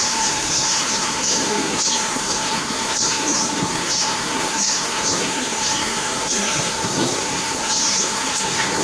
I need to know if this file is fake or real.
fake